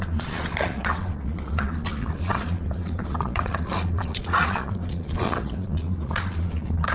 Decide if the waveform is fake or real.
fake